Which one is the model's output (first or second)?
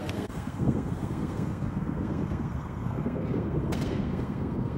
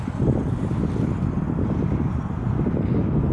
first